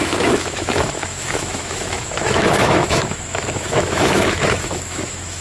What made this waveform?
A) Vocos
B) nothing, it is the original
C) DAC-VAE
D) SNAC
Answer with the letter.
C